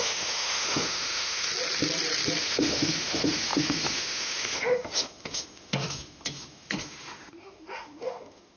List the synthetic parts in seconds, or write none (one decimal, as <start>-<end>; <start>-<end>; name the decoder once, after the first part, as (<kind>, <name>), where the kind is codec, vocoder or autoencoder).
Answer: 0.0-1.5 (autoencoder, DAC-VAE); 2.4-8.6